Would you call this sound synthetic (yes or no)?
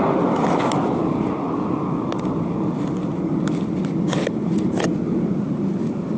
no